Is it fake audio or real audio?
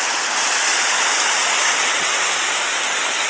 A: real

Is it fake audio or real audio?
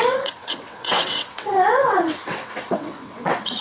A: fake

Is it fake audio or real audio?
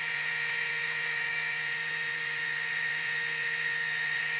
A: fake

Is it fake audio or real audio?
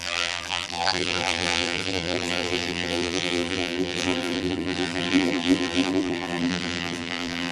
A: fake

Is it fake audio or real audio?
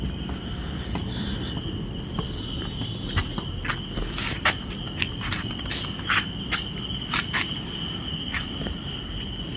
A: real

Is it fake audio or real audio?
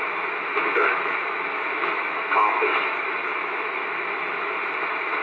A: fake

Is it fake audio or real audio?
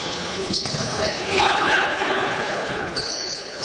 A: fake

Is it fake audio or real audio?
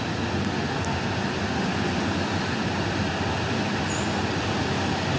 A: real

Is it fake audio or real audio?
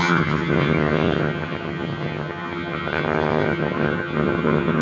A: fake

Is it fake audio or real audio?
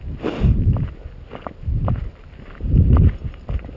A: real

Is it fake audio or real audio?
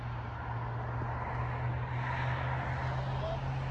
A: real